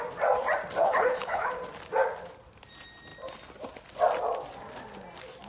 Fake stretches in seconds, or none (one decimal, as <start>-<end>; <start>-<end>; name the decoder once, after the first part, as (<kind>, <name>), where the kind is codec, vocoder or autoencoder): 0.8-1.5 (codec, HILCodec)